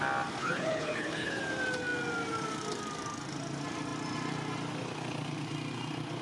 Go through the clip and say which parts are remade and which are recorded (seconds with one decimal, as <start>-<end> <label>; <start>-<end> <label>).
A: 0.0-0.4 recorded; 0.4-1.4 remade; 1.4-6.2 recorded